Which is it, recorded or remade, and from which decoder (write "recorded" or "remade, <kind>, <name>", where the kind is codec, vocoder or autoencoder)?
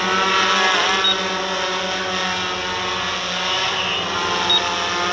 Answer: recorded